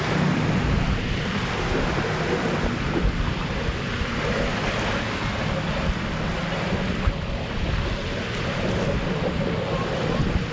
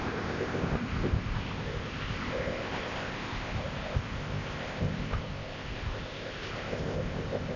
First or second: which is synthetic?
second